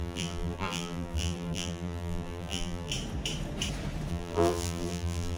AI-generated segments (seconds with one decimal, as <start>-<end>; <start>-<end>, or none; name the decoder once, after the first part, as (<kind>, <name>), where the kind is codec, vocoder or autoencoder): 0.0-2.9 (vocoder, BigVGAN v2); 4.1-5.4